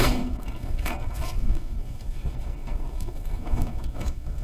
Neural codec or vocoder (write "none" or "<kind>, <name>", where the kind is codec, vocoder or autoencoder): codec, SNAC